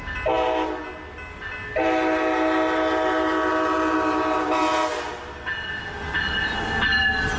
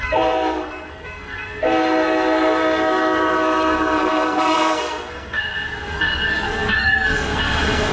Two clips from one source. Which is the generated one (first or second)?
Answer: second